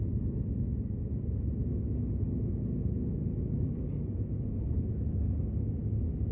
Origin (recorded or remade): recorded